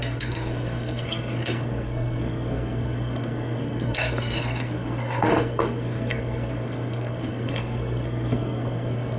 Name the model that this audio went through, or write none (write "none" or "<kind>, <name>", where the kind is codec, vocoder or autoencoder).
codec, SNAC